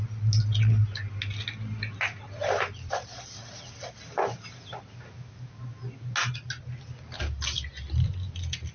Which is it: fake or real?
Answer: real